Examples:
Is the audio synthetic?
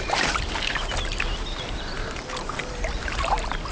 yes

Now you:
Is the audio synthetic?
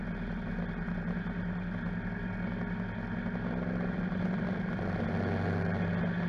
no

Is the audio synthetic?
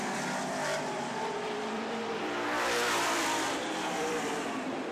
yes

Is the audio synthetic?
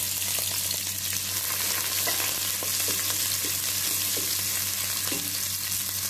no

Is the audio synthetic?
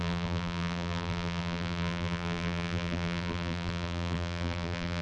yes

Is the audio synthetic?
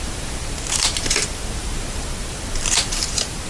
yes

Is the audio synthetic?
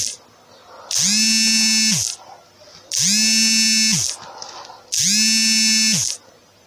no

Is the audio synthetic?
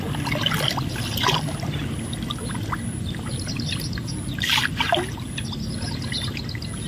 no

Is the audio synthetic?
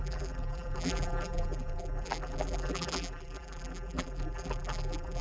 yes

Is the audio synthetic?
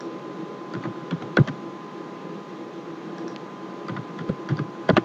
yes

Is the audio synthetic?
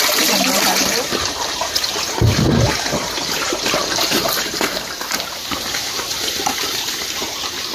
yes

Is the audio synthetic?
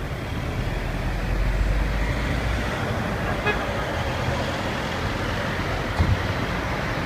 no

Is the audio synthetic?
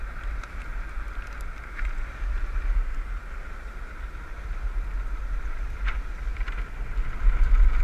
yes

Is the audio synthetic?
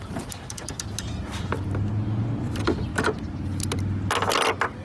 no